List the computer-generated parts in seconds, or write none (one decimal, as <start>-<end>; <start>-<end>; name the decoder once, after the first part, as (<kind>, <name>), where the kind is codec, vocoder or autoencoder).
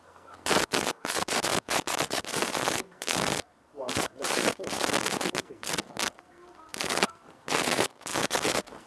0.0-8.9 (codec, SNAC)